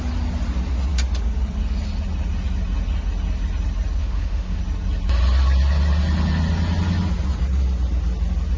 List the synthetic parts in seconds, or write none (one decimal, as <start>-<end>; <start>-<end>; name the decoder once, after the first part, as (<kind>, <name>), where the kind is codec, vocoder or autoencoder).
4.0-4.6 (autoencoder, DAC-VAE)